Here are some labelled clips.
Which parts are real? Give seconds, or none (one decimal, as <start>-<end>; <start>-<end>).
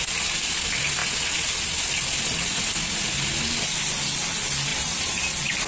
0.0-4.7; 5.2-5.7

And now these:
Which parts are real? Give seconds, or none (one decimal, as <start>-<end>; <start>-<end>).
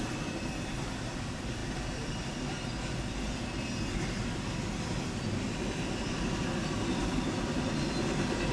0.0-8.5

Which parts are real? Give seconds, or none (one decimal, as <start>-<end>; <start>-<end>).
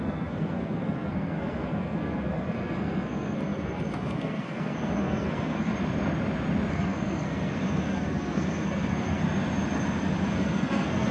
5.7-6.7; 9.2-10.3